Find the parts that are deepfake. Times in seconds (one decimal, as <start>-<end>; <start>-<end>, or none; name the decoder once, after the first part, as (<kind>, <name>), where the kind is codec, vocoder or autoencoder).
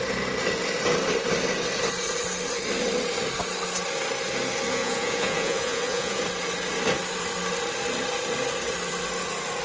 4.7-6.2 (vocoder, Vocos)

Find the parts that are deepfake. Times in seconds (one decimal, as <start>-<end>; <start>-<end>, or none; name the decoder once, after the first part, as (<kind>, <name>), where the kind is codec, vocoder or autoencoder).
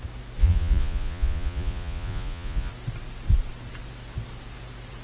0.4-2.7 (vocoder, Vocos)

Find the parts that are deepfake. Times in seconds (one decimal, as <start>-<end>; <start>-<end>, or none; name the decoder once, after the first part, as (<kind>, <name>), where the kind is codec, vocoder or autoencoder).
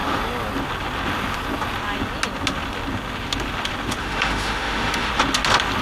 4.0-5.1 (autoencoder, DAC-VAE)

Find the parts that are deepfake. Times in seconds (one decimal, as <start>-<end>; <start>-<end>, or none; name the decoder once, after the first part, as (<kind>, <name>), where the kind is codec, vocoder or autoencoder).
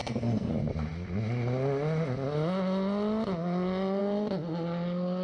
0.0-0.5 (codec, SNAC)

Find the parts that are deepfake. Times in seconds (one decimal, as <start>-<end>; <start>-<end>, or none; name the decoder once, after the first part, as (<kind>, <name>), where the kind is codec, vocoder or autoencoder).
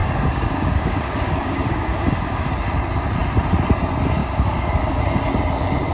0.0-2.5 (codec, DAC); 4.2-5.0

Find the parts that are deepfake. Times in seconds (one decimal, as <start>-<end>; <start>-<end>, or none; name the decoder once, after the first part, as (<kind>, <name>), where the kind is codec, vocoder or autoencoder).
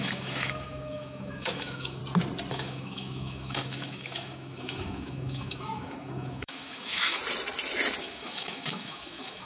0.0-2.0 (autoencoder, DAC-VAE); 2.5-7.2; 8.0-9.5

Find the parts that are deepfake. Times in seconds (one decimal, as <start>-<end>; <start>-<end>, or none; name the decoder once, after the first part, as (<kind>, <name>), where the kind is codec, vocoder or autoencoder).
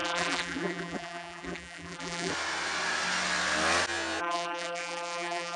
0.0-2.3 (vocoder, BigVGAN v2); 4.2-5.6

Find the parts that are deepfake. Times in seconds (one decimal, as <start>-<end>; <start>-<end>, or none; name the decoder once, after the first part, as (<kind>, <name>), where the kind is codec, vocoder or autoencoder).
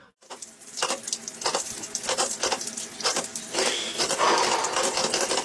none